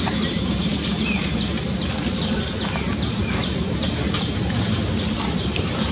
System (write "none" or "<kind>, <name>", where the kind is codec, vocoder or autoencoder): none